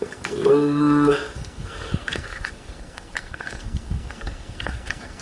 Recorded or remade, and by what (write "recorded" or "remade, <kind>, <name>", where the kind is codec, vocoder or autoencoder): remade, codec, SNAC